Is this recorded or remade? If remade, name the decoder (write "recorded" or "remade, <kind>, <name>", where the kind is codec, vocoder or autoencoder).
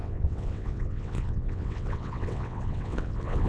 remade, vocoder, WaveNeXt